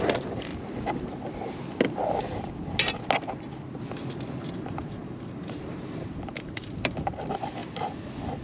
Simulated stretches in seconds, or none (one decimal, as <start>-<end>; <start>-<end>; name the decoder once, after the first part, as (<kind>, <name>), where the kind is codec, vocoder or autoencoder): 0.0-0.5 (vocoder, BigVGAN v2); 4.5-8.4